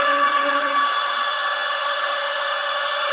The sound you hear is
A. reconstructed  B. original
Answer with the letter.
A